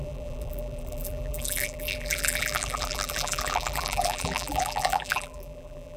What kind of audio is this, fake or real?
fake